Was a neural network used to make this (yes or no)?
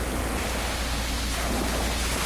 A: no